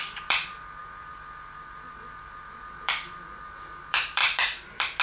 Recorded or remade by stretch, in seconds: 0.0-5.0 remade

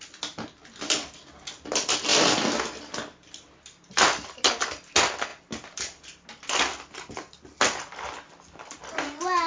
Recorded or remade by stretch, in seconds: 0.0-9.5 recorded

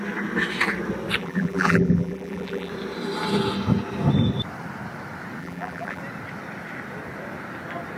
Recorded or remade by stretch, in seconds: 0.0-1.2 recorded; 1.2-2.7 remade; 2.7-5.4 recorded; 5.4-6.0 remade; 6.0-8.0 recorded